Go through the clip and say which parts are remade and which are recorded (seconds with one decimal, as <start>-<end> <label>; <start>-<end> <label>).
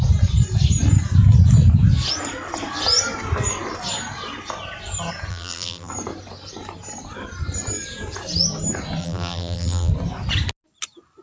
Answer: 0.0-5.3 recorded; 5.3-5.9 remade; 5.9-9.0 recorded; 9.0-9.9 remade; 9.9-11.2 recorded